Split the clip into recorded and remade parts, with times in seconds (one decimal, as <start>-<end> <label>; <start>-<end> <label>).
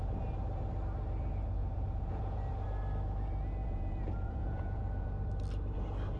0.0-1.6 recorded; 1.6-2.4 remade; 2.4-3.6 recorded; 3.6-5.1 remade; 5.1-6.2 recorded